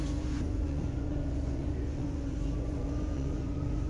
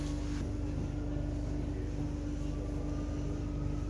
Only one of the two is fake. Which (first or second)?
first